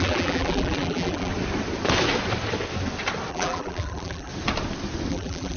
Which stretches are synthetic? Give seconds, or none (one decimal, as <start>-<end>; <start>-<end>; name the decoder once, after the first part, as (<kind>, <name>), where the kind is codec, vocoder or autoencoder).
0.0-1.3 (vocoder, BigVGAN v2); 3.3-4.3; 5.1-5.6